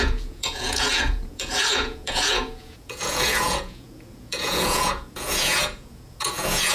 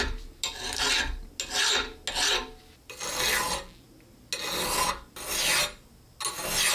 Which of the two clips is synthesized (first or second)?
first